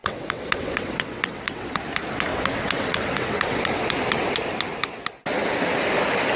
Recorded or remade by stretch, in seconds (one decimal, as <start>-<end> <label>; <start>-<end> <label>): 0.0-1.8 remade; 1.8-2.3 recorded; 2.3-3.9 remade; 3.9-6.4 recorded